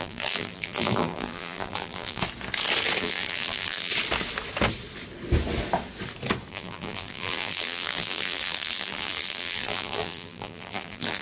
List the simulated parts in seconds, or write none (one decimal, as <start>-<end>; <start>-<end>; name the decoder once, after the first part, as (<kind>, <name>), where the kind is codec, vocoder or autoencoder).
0.0-2.2 (vocoder, BigVGAN v2); 3.0-3.9; 6.5-11.2